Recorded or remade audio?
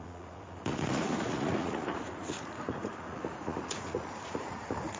remade